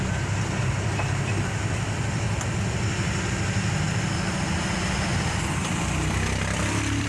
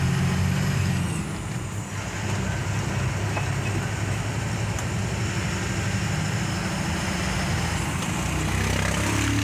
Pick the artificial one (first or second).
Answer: first